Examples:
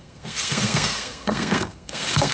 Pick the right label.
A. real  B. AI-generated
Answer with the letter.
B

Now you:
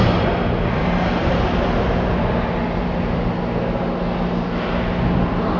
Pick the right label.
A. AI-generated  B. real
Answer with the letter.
B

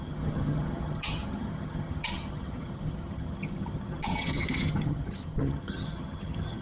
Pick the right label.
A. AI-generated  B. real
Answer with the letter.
A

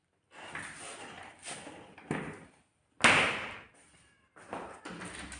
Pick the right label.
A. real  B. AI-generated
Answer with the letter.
A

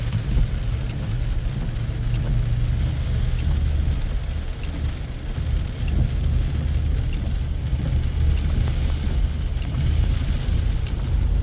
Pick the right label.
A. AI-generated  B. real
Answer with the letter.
B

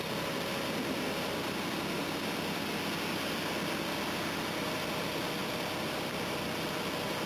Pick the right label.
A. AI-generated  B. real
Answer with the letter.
B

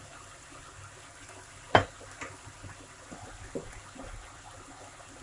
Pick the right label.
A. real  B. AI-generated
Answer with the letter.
A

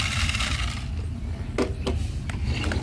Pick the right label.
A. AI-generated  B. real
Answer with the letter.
A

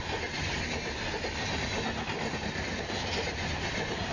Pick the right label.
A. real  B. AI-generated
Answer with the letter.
A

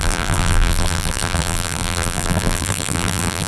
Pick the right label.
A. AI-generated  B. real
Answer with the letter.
A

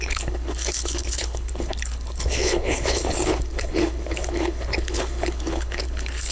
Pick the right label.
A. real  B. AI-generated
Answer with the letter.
B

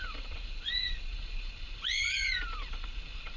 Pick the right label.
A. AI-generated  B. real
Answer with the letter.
A